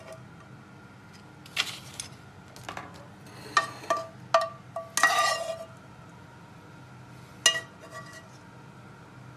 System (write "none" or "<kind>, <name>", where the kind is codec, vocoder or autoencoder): none